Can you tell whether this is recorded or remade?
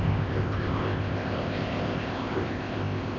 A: remade